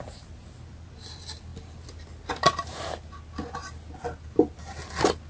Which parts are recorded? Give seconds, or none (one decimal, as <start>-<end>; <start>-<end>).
0.0-5.3